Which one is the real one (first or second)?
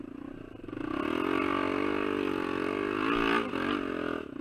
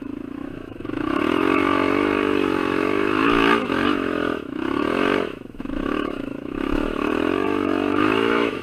first